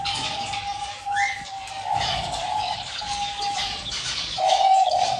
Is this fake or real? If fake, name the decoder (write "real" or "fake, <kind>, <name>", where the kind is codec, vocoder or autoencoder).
fake, codec, DAC